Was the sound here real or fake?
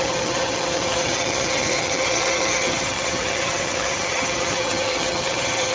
fake